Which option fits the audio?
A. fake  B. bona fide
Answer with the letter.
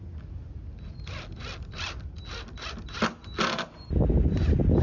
B